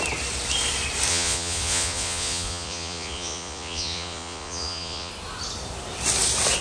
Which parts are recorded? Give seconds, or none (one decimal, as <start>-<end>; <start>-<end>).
0.0-1.1; 5.1-6.6